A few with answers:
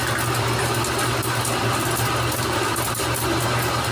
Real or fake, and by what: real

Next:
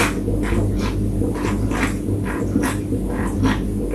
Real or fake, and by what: real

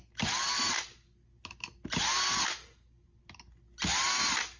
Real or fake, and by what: real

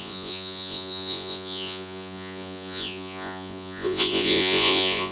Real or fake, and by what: fake, vocoder, Vocos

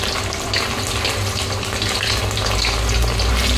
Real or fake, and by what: real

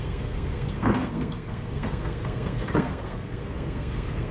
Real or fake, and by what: fake, codec, SNAC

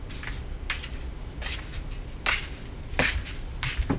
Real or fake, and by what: real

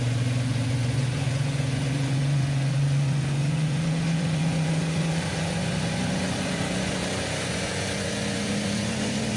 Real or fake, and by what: fake, vocoder, Vocos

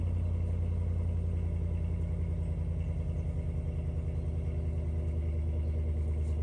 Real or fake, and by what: real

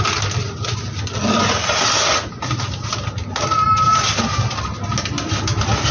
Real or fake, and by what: real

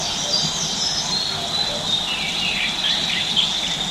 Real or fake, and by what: real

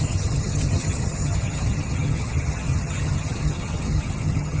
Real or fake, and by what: fake, vocoder, HiFi-GAN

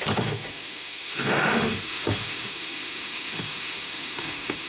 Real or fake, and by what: fake, autoencoder, DAC-VAE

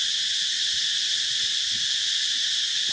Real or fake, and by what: real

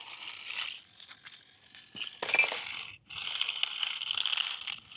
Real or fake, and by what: real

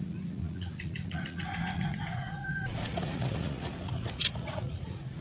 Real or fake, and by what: fake, vocoder, Vocos